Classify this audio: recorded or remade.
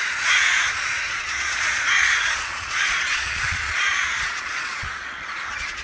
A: remade